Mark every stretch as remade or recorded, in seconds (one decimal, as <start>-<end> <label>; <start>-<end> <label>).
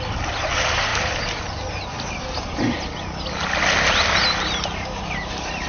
0.0-5.7 recorded